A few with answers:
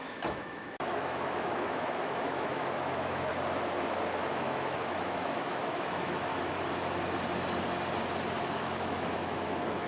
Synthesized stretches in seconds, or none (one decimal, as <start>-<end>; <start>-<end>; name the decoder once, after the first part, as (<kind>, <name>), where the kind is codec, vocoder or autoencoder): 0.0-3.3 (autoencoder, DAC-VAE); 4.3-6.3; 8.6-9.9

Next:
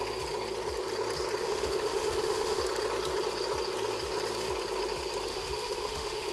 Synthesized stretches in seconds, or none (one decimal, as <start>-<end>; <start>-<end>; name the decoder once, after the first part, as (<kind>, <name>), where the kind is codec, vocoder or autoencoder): 1.4-2.6 (autoencoder, DAC-VAE); 5.3-6.3

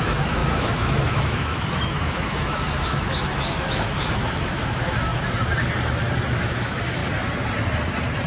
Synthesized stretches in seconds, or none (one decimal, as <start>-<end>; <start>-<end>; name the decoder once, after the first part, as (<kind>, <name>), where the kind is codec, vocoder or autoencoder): 0.0-5.1 (autoencoder, DAC-VAE); 6.3-7.0

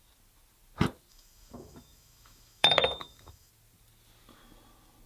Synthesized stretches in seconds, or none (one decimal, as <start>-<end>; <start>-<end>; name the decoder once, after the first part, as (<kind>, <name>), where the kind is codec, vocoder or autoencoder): 1.1-3.5 (autoencoder, DAC-VAE)

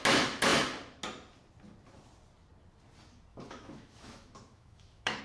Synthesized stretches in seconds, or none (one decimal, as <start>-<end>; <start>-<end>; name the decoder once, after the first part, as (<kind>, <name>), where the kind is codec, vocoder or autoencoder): 3.3-5.2 (autoencoder, DAC-VAE)

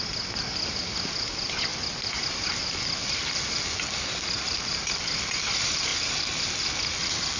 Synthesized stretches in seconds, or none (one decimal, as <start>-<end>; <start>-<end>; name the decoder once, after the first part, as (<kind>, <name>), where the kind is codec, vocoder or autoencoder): none

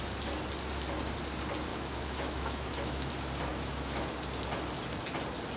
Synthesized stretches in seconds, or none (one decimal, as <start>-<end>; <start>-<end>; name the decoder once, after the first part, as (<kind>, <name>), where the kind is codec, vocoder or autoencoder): 1.7-3.1 (autoencoder, DAC-VAE); 3.5-4.1

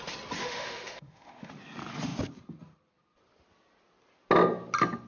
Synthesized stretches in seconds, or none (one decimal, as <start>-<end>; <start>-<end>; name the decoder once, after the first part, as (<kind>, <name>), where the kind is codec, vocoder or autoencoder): 0.4-1.5 (autoencoder, DAC-VAE)